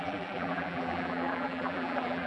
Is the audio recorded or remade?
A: remade